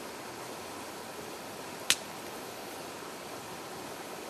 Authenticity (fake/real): real